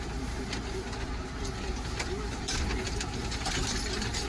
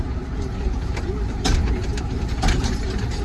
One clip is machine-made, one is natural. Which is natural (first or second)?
first